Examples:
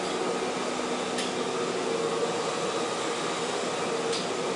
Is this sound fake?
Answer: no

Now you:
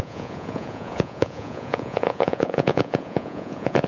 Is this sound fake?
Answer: yes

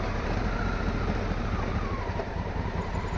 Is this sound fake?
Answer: no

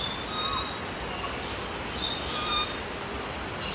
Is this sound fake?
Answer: no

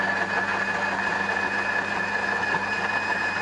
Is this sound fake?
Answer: no